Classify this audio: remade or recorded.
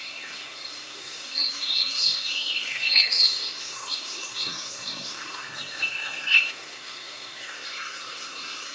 remade